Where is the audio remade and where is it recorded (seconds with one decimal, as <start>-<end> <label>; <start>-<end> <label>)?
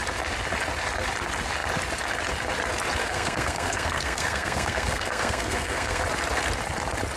0.0-3.0 recorded; 3.0-6.0 remade; 6.0-7.2 recorded